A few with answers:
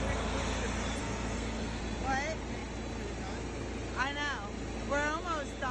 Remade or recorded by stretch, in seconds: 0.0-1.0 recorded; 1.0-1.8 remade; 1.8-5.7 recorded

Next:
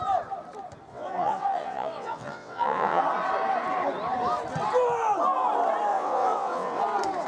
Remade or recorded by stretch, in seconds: 0.0-0.9 recorded; 0.9-3.0 remade; 3.0-5.9 recorded; 5.9-6.8 remade; 6.8-7.3 recorded

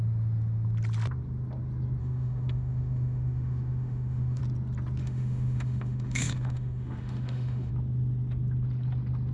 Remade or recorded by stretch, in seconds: 0.0-2.0 recorded; 2.0-4.4 remade; 4.4-5.0 recorded; 5.0-7.7 remade; 7.7-9.3 recorded

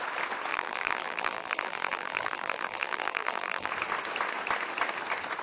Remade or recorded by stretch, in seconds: 0.0-0.5 recorded; 0.5-3.7 remade; 3.7-5.4 recorded

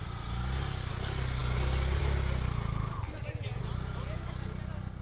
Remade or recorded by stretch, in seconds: 0.0-5.0 recorded